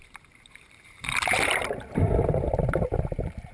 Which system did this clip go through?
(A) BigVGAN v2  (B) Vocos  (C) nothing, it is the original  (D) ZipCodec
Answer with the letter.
A